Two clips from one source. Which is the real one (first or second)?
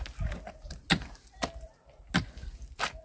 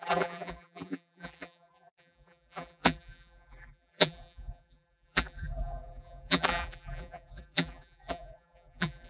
first